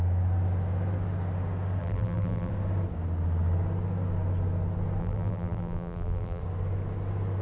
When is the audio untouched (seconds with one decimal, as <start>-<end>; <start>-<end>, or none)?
0.0-1.8; 2.5-5.0; 6.4-7.4